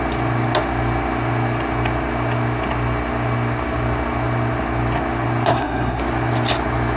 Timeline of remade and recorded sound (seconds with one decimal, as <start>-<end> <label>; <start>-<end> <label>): 0.0-5.5 recorded; 5.5-6.0 remade; 6.0-7.0 recorded